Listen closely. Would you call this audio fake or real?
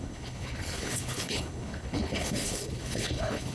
fake